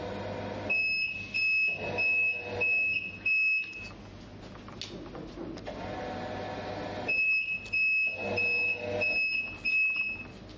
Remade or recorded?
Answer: recorded